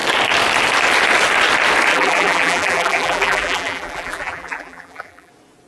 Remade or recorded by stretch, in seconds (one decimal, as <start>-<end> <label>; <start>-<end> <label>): 0.0-1.9 recorded; 1.9-5.3 remade; 5.3-5.7 recorded